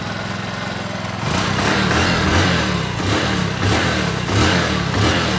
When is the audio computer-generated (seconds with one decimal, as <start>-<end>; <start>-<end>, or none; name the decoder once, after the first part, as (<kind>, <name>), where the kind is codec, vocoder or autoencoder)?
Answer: 3.4-4.9 (codec, DAC)